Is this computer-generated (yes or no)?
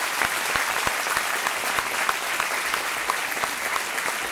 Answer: no